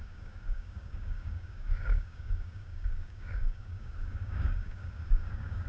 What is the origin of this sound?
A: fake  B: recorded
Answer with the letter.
A